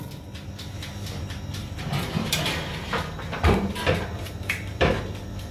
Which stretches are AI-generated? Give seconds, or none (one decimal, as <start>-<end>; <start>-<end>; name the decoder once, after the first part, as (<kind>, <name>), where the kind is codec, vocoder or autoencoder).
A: 1.6-4.9 (vocoder, BigVGAN v2)